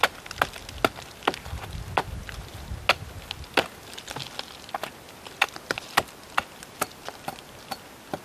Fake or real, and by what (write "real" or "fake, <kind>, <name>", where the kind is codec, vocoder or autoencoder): real